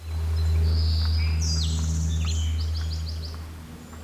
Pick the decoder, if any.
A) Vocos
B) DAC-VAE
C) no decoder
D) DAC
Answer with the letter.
C